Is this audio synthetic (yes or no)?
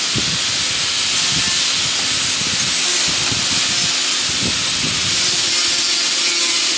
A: no